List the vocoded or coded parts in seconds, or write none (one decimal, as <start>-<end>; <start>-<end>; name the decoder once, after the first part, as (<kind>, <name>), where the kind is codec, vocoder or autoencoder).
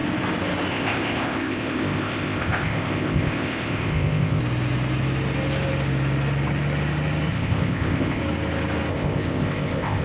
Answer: 0.7-4.4 (codec, ZipCodec); 7.3-8.2; 8.9-10.0